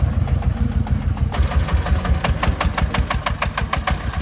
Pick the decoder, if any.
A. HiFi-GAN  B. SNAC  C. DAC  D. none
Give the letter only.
D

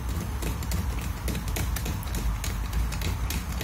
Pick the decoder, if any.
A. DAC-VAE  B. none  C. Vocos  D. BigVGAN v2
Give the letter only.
B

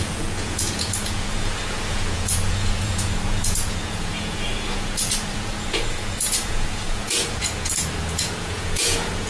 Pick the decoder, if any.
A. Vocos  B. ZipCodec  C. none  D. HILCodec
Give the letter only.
A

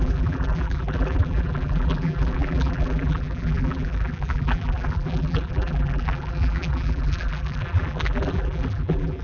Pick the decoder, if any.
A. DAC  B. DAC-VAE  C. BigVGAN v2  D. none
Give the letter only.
C